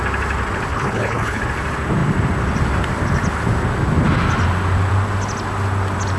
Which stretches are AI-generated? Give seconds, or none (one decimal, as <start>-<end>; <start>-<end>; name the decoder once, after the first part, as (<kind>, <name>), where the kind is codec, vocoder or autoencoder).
0.7-1.4 (codec, HILCodec)